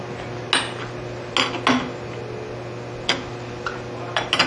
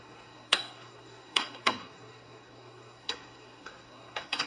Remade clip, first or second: second